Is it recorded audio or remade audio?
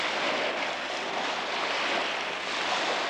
recorded